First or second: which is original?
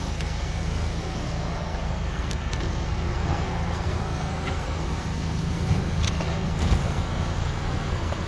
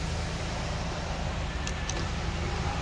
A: second